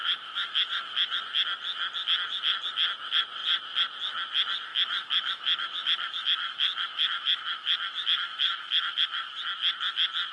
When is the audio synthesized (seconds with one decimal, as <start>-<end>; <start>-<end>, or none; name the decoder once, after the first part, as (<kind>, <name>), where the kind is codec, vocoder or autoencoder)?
0.0-1.2 (autoencoder, DAC-VAE); 4.7-9.4